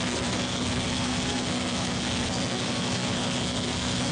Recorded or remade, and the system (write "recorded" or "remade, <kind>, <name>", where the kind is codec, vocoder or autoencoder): remade, codec, SNAC